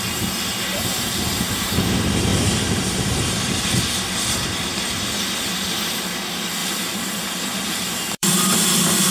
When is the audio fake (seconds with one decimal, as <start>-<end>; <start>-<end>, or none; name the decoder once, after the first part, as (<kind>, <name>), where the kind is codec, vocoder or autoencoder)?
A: 2.3-3.6 (vocoder, BigVGAN v2); 6.6-8.3